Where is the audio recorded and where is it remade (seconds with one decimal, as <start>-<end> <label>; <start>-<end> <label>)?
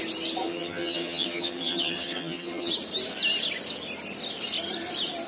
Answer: 0.0-0.4 recorded; 0.4-2.7 remade; 2.7-5.3 recorded